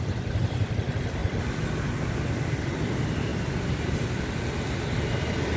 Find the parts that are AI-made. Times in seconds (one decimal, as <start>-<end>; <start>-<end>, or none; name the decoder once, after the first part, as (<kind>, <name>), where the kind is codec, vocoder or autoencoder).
none